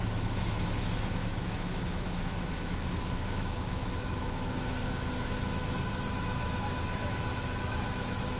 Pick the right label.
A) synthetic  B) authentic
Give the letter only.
A